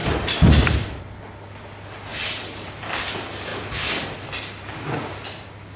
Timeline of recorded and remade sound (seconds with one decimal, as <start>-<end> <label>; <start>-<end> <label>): 0.0-1.0 remade; 1.0-2.1 recorded; 2.1-2.9 remade; 2.9-3.5 recorded; 3.5-4.4 remade; 4.4-5.8 recorded